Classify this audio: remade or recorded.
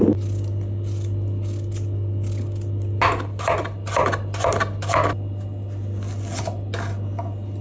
recorded